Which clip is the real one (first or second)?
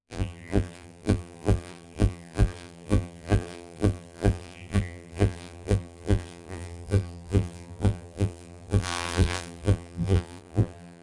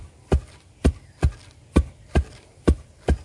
second